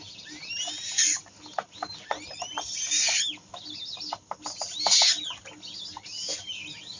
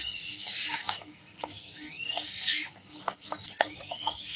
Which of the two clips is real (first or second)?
first